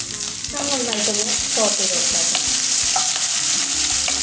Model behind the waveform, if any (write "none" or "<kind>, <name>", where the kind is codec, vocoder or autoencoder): vocoder, BigVGAN v2